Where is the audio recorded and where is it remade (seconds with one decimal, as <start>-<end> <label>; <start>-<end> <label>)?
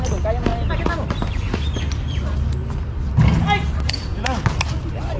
0.0-5.2 recorded